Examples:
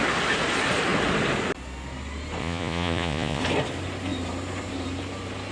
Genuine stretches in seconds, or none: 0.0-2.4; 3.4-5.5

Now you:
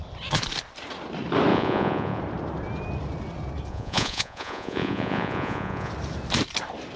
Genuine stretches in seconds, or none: 0.0-1.5; 2.2-3.7; 5.9-7.0